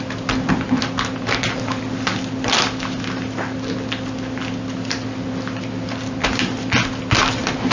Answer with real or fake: real